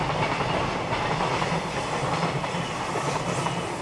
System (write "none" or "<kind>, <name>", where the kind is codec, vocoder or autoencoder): vocoder, BigVGAN v2